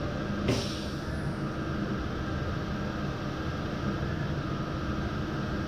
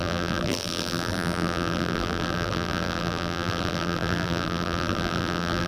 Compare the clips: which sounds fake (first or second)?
second